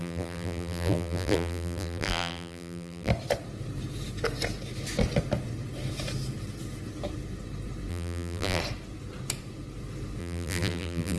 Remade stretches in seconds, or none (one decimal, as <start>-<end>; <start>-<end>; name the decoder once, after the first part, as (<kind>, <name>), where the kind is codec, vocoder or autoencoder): 0.0-3.1 (vocoder, BigVGAN v2); 7.9-8.6; 10.2-11.2